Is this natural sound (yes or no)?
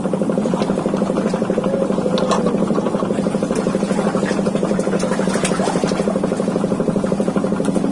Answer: yes